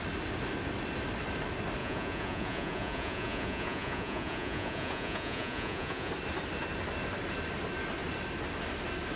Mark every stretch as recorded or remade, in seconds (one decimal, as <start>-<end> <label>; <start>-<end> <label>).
0.0-1.8 recorded; 1.8-6.1 remade; 6.1-9.2 recorded